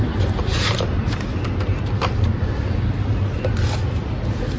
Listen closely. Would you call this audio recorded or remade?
recorded